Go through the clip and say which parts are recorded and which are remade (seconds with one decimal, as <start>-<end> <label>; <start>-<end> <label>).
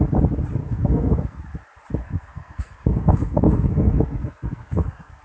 0.0-0.6 recorded; 0.6-1.4 remade; 1.4-2.0 recorded; 2.0-5.2 remade